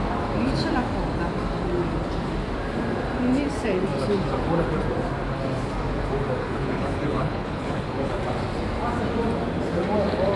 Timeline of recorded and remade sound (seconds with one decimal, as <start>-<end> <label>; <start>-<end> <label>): 0.0-6.4 recorded; 6.4-8.2 remade; 8.2-10.4 recorded